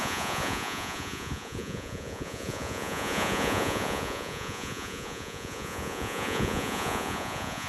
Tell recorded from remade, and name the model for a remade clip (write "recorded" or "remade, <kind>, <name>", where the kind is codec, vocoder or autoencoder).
remade, vocoder, Vocos